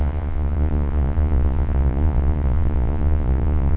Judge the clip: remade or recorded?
remade